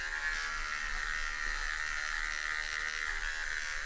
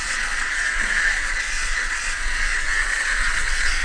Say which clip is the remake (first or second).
second